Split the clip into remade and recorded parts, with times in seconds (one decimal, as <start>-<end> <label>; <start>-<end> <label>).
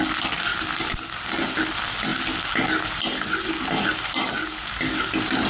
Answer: 0.0-5.5 recorded